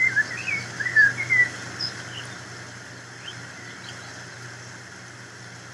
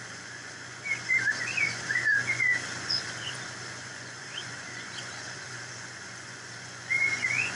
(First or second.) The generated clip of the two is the second